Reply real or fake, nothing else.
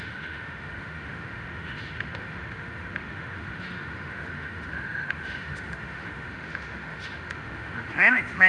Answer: fake